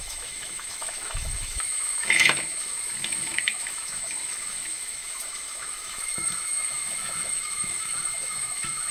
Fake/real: fake